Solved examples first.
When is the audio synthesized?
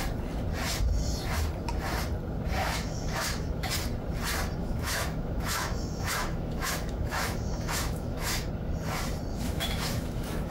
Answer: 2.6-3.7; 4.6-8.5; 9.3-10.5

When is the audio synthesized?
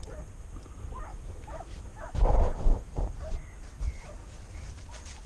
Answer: 1.1-2.2; 4.2-4.7